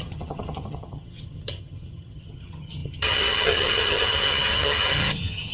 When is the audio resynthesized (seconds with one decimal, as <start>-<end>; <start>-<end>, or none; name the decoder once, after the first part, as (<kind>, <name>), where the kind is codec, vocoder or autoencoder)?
0.0-5.5 (vocoder, HiFi-GAN)